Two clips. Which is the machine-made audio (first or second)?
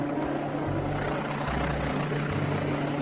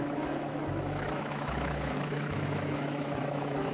second